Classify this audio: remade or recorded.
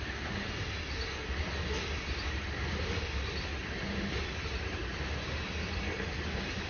recorded